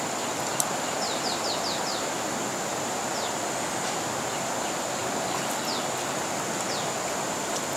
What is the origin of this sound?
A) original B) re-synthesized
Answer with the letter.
A